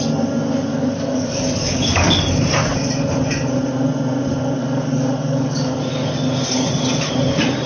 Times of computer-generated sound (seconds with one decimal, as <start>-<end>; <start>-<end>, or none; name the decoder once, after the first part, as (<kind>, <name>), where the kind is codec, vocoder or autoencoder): 0.7-2.2 (codec, DAC); 4.6-5.8